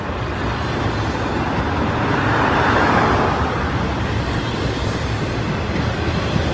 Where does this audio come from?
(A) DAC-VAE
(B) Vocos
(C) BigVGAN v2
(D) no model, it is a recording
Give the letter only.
D